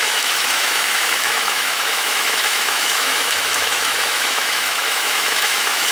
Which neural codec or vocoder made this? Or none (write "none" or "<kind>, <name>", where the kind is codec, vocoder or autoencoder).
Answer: autoencoder, DAC-VAE